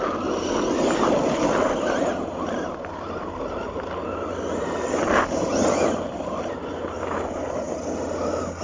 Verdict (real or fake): real